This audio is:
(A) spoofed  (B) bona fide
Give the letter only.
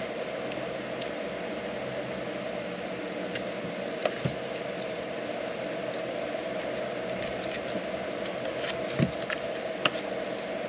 B